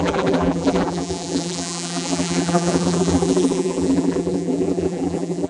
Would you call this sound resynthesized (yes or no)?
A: yes